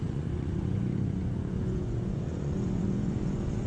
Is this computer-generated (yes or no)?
yes